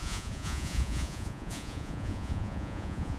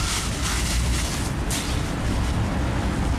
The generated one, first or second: first